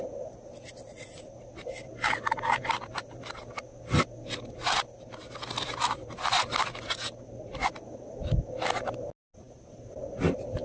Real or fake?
real